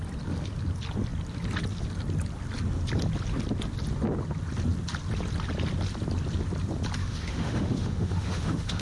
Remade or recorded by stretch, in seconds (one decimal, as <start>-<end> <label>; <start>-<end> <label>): 0.0-7.0 recorded; 7.0-8.8 remade